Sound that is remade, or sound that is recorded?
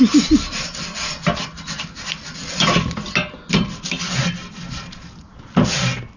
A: recorded